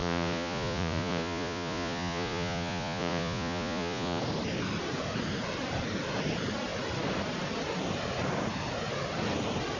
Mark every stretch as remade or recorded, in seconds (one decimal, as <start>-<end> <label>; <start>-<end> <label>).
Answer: 0.0-4.2 remade; 4.2-9.8 recorded